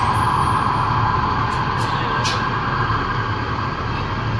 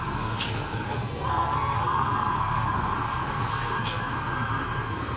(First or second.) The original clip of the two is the first